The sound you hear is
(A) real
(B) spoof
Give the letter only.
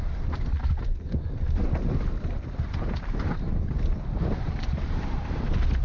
A